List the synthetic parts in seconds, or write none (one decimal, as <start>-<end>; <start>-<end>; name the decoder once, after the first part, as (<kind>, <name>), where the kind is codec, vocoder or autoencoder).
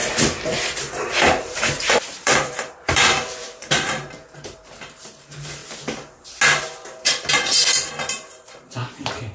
1.2-5.6 (vocoder, BigVGAN v2); 7.9-9.3